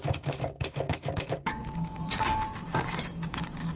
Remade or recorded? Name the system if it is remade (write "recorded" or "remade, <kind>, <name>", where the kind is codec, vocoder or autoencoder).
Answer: remade, codec, DAC